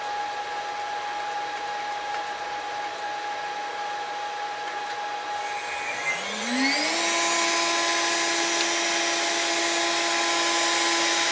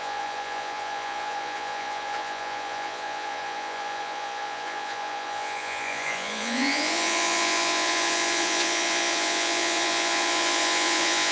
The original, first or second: first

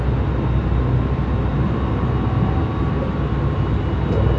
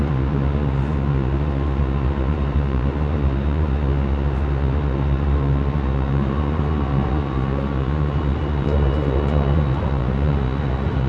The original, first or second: first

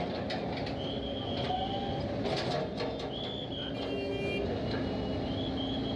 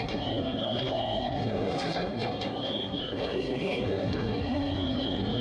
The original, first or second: first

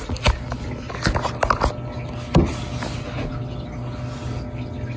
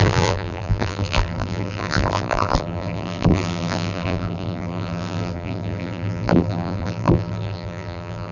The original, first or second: first